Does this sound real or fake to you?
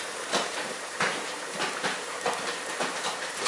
fake